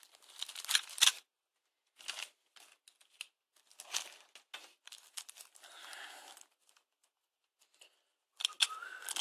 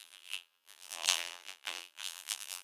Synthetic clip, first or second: second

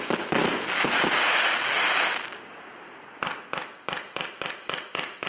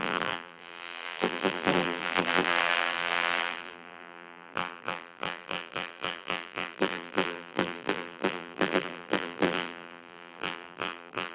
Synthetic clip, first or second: second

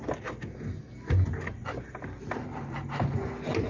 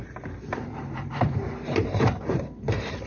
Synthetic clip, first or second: second